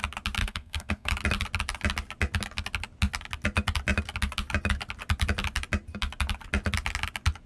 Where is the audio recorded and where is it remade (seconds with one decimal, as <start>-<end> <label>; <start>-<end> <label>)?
0.0-0.4 recorded; 0.4-1.1 remade; 1.1-7.5 recorded